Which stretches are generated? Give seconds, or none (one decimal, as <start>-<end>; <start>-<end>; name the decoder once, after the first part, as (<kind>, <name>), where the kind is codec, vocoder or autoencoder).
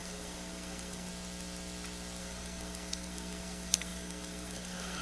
0.0-1.1 (codec, SNAC); 2.2-5.0